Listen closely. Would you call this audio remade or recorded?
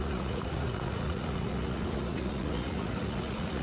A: remade